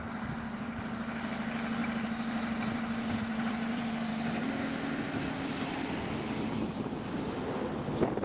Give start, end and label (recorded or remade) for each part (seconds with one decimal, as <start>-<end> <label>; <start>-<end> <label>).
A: 0.0-1.8 recorded; 1.8-6.1 remade; 6.1-8.2 recorded